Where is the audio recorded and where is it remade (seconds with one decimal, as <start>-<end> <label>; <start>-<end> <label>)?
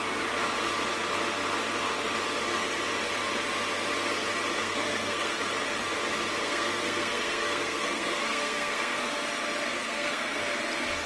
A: 0.0-4.6 recorded; 4.6-5.4 remade; 5.4-6.4 recorded; 6.4-9.0 remade; 9.0-9.7 recorded; 9.7-10.4 remade; 10.4-11.1 recorded